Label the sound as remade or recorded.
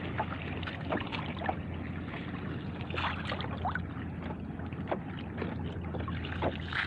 recorded